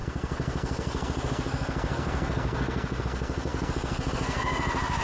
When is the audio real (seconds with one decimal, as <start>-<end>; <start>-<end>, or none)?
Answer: none